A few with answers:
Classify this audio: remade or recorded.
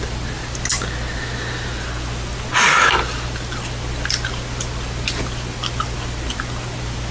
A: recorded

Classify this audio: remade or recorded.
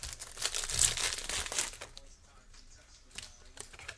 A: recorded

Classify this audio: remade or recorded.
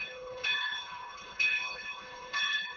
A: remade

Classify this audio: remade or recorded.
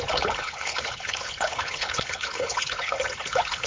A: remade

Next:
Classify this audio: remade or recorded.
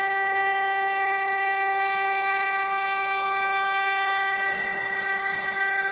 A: remade